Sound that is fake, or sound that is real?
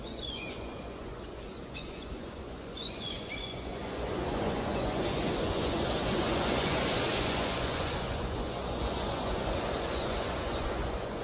fake